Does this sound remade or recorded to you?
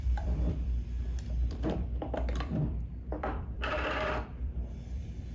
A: remade